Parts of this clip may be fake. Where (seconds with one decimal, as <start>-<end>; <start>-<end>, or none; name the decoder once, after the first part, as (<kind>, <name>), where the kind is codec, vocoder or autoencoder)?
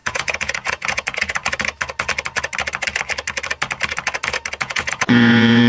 0.0-1.4 (vocoder, Vocos); 4.6-5.7